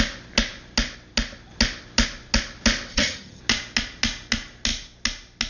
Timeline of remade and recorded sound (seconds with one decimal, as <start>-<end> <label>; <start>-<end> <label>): 0.0-2.9 recorded; 2.9-3.4 remade; 3.4-5.5 recorded